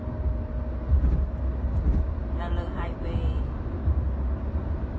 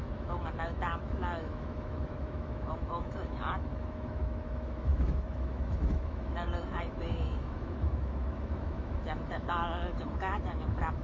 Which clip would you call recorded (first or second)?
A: first